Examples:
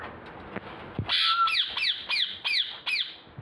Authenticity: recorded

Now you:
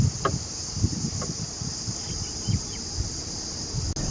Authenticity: recorded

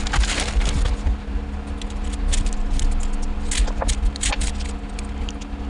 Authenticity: recorded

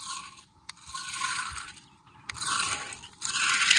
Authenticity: recorded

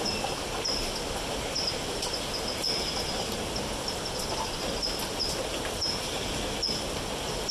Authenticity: recorded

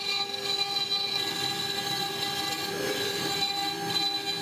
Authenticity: recorded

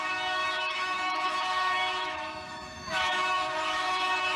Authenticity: remade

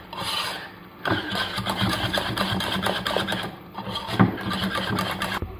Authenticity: recorded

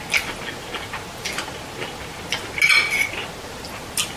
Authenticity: recorded